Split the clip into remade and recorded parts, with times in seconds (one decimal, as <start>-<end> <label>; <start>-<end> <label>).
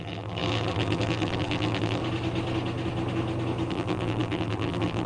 0.0-2.0 remade; 2.0-3.7 recorded; 3.7-5.1 remade